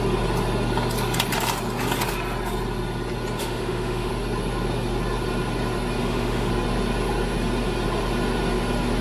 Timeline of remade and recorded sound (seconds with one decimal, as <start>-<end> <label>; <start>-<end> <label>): 0.0-3.4 recorded; 3.4-4.1 remade; 4.1-6.0 recorded; 6.0-6.5 remade; 6.5-9.0 recorded